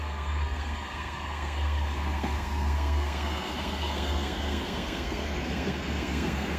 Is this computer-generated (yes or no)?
yes